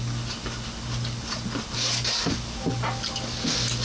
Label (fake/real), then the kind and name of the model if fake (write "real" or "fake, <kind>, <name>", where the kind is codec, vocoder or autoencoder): real